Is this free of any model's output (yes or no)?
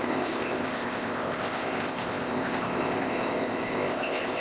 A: no